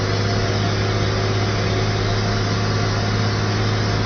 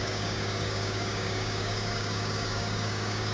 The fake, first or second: second